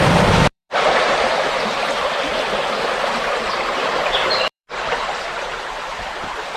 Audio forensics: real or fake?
fake